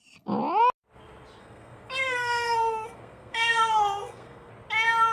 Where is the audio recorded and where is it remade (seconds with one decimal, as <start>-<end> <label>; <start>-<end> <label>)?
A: 0.0-1.4 recorded; 1.4-4.5 remade; 4.5-5.1 recorded